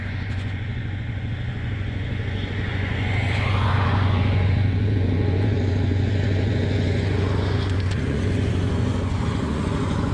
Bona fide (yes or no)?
no